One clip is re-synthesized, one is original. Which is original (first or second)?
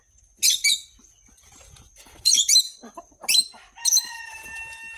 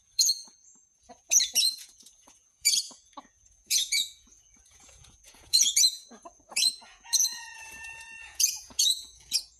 first